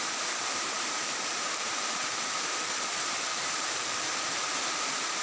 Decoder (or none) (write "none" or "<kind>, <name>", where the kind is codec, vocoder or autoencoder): vocoder, BigVGAN v2